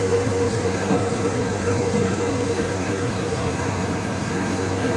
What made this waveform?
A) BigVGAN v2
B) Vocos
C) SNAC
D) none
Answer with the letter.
C